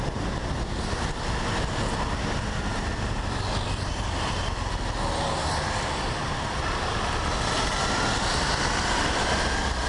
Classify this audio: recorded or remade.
recorded